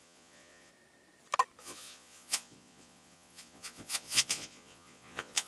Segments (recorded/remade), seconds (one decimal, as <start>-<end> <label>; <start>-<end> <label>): 0.0-0.7 remade; 0.7-1.6 recorded; 1.6-5.5 remade